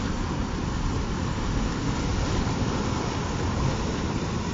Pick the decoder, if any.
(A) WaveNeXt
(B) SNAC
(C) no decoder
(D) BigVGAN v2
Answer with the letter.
C